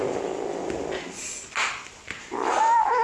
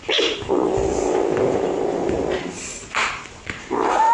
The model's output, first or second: second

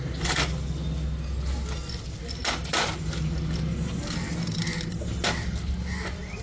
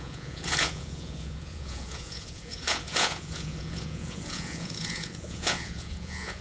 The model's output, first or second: second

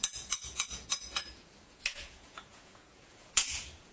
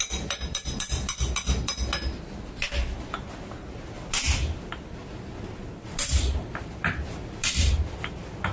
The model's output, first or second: first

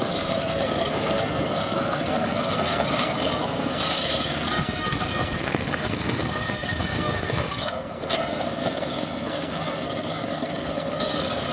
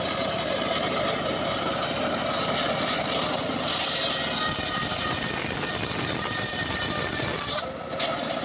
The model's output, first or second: first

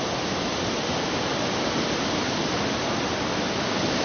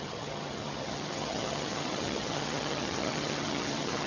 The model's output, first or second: second